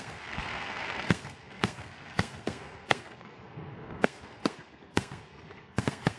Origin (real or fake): fake